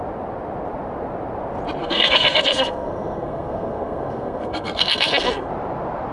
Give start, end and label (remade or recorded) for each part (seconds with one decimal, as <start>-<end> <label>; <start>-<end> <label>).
0.0-1.8 recorded; 1.8-5.5 remade; 5.5-6.1 recorded

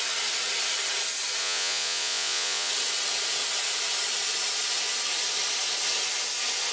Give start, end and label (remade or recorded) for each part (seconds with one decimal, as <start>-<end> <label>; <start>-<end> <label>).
0.0-1.4 recorded; 1.4-2.7 remade; 2.7-6.7 recorded